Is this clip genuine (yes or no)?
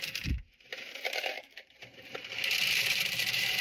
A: no